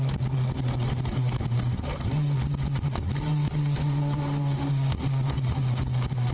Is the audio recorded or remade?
recorded